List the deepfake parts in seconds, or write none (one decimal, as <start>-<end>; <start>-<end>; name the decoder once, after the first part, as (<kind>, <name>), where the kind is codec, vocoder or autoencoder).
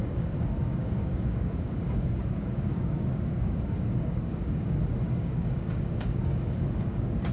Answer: 0.0-7.3 (codec, DAC)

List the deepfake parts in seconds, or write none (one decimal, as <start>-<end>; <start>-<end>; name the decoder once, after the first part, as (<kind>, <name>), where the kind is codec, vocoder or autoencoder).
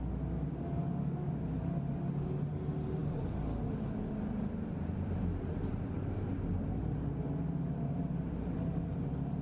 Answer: 0.8-1.3 (codec, DAC)